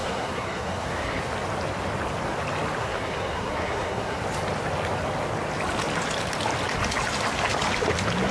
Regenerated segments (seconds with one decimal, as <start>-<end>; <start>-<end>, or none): 0.0-1.2; 2.8-4.2